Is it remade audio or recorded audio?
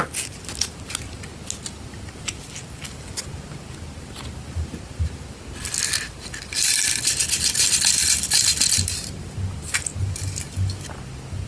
recorded